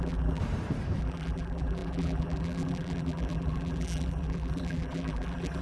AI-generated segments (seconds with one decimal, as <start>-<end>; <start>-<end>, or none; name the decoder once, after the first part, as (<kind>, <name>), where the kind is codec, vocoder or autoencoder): 0.0-0.4 (vocoder, BigVGAN v2); 1.0-5.6